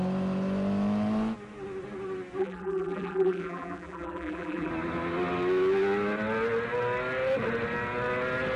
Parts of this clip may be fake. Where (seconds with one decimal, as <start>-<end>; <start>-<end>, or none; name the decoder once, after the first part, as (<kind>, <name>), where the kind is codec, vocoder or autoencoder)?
2.4-4.7 (vocoder, BigVGAN v2)

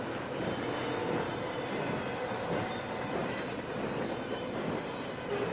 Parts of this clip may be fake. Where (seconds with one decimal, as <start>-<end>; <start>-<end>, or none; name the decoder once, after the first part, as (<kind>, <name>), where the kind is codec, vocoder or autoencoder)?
1.0-3.3 (vocoder, BigVGAN v2)

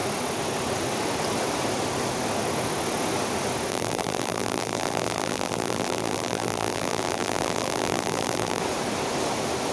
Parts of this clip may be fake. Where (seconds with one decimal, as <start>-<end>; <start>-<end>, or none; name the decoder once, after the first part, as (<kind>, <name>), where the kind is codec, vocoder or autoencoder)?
3.7-8.6 (vocoder, BigVGAN v2)

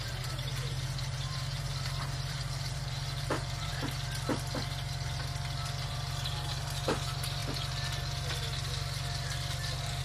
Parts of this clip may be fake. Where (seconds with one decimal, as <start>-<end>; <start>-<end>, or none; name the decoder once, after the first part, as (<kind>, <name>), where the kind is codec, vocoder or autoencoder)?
0.0-3.7 (vocoder, BigVGAN v2); 5.9-7.4

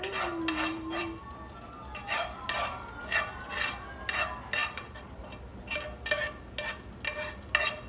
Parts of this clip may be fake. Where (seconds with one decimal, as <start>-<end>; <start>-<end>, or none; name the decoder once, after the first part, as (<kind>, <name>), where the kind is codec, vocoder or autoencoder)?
0.7-1.9 (vocoder, BigVGAN v2); 4.6-5.2